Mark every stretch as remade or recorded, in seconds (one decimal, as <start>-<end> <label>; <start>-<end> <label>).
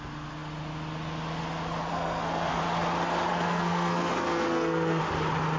0.0-1.9 recorded; 1.9-2.6 remade; 2.6-3.3 recorded; 3.3-5.0 remade; 5.0-5.6 recorded